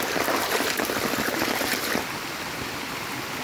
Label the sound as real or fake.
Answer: real